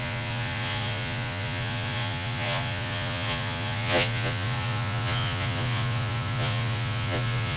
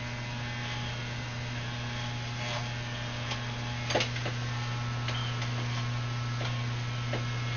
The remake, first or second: first